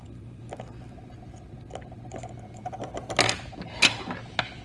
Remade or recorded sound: recorded